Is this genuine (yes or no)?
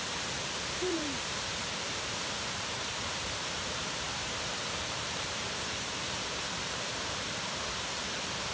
no